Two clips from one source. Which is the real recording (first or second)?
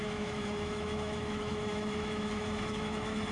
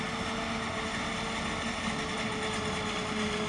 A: second